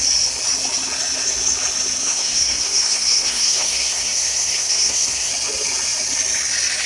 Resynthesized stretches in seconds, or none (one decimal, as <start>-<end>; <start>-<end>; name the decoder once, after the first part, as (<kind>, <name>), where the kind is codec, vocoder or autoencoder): 2.0-5.3 (codec, SNAC)